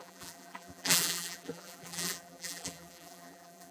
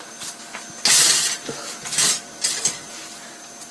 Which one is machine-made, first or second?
first